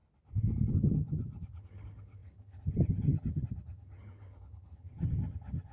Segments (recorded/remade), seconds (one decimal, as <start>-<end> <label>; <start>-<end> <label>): 0.0-0.7 recorded; 0.7-5.7 remade